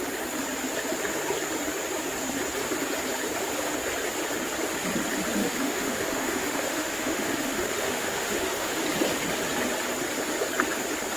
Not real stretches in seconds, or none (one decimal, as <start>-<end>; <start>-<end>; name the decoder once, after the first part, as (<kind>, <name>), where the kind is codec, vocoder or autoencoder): 5.4-8.8 (autoencoder, DAC-VAE)